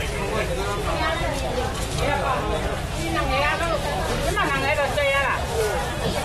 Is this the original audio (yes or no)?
yes